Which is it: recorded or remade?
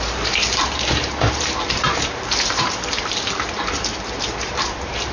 remade